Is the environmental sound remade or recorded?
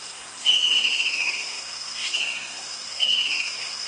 remade